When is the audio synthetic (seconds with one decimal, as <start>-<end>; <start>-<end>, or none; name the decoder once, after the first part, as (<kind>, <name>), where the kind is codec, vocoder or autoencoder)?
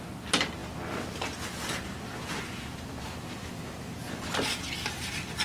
none